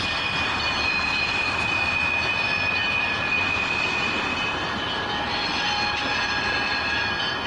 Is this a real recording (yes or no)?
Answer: yes